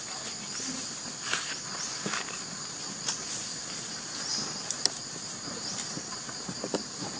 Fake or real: real